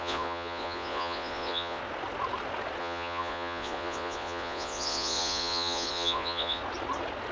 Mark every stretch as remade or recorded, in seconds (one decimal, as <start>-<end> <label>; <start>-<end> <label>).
0.0-1.8 remade; 1.8-2.8 recorded; 2.8-6.6 remade; 6.6-7.3 recorded

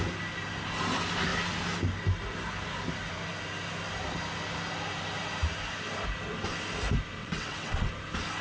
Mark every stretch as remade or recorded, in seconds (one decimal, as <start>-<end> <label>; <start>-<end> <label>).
0.0-7.2 recorded; 7.2-7.9 remade; 7.9-8.4 recorded

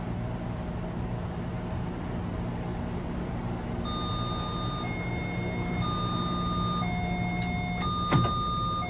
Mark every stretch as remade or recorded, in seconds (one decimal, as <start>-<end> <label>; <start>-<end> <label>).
0.0-8.9 recorded

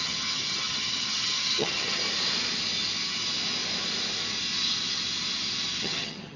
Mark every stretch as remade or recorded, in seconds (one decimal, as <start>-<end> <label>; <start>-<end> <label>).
0.0-2.0 remade; 2.0-5.8 recorded; 5.8-6.4 remade

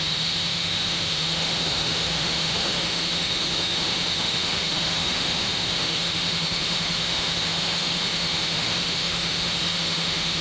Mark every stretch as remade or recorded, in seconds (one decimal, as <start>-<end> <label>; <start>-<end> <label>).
0.0-10.4 remade

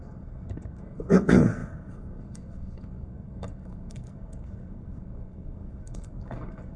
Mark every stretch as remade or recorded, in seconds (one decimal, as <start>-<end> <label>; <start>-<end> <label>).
0.0-6.8 remade

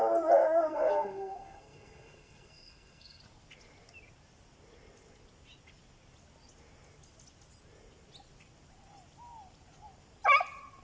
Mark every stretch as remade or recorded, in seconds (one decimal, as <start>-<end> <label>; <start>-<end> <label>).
0.0-0.7 recorded; 0.7-3.2 remade; 3.2-10.8 recorded